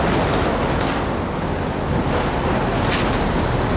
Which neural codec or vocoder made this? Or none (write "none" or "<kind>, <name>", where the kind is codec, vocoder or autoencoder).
none